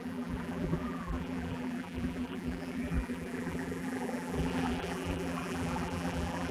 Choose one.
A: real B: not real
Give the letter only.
B